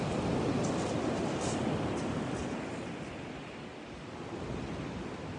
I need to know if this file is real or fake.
real